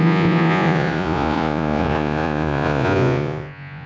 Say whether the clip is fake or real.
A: fake